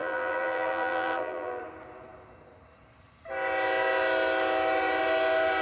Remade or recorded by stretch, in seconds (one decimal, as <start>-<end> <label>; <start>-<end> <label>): 0.0-1.6 remade; 1.6-5.6 recorded